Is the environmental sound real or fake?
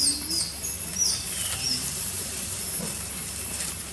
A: real